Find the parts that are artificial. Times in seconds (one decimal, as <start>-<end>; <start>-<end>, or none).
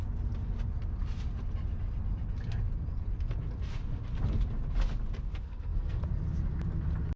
5.3-6.0